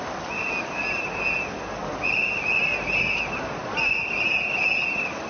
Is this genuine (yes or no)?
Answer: yes